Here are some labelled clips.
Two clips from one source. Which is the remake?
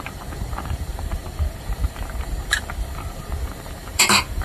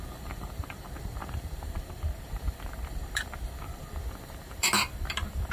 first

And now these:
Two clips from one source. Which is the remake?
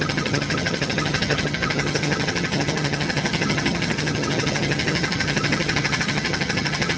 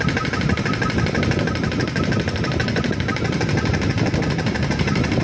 first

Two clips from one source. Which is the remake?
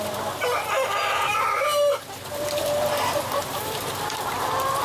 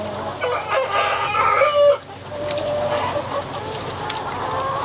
first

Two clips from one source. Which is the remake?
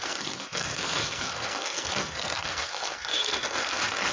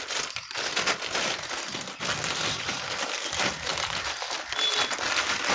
first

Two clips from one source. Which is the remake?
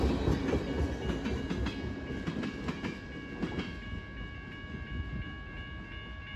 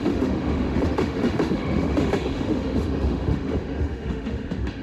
second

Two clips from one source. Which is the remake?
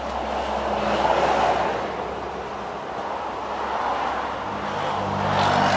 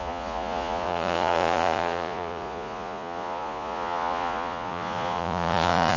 second